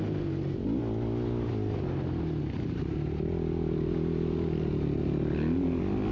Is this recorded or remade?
recorded